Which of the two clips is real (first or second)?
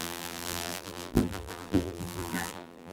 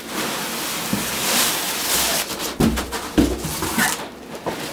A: second